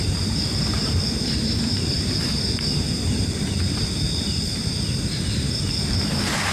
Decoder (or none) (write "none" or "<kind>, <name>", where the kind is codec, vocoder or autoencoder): vocoder, BigVGAN v2